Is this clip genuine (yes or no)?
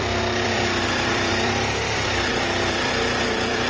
no